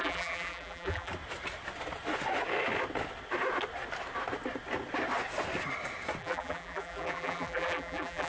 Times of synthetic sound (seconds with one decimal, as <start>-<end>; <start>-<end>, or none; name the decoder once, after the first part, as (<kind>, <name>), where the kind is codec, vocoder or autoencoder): 0.0-1.1 (vocoder, BigVGAN v2); 6.2-8.3